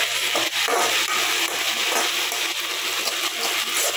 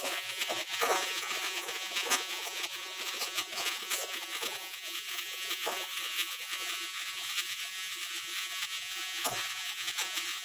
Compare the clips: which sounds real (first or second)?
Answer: first